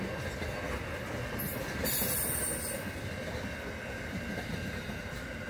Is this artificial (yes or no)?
no